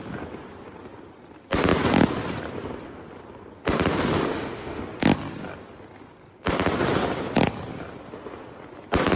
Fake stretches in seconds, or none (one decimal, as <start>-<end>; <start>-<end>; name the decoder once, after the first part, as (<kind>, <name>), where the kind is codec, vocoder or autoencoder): 4.3-4.8 (autoencoder, DAC-VAE)

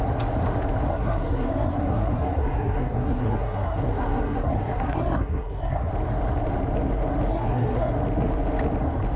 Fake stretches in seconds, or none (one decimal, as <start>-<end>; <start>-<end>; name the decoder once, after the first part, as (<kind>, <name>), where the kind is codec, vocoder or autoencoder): 0.9-5.9 (codec, SNAC); 7.3-7.9

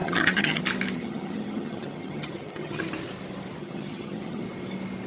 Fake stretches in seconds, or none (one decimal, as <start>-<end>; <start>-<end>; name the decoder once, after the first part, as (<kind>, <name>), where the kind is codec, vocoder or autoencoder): 0.0-0.6 (vocoder, HiFi-GAN); 1.0-2.8; 3.6-4.4

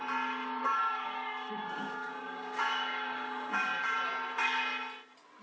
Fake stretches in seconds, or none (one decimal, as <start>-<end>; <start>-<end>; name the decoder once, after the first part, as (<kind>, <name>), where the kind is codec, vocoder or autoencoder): 0.6-3.8 (codec, DAC)

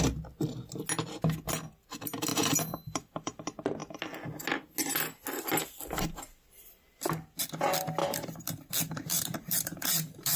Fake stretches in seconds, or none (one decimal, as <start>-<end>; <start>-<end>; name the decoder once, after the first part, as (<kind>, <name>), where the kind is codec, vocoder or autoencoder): 2.3-3.4 (vocoder, BigVGAN v2); 8.0-10.4

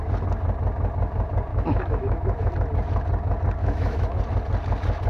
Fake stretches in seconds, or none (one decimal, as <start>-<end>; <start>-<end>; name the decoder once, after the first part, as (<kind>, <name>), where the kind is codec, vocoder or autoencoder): 1.5-2.5 (autoencoder, DAC-VAE); 3.6-4.2